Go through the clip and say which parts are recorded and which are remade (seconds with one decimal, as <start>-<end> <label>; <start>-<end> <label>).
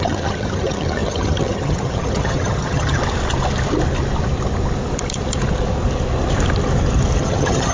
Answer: 0.0-3.0 remade; 3.0-7.2 recorded; 7.2-7.7 remade